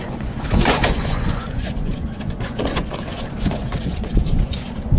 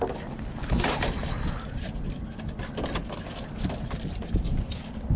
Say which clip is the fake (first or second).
first